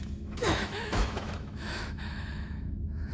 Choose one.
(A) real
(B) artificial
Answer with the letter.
B